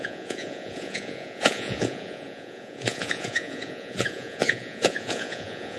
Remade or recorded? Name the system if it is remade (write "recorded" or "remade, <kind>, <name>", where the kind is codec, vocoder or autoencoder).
remade, vocoder, Vocos